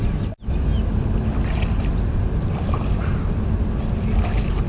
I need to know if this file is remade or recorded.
recorded